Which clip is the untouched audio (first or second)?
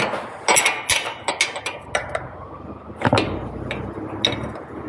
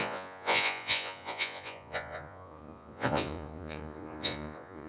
first